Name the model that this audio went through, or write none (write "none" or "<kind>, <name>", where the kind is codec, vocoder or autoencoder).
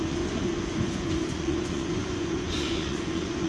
vocoder, Vocos